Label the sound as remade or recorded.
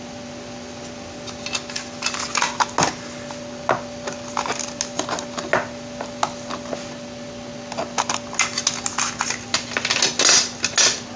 recorded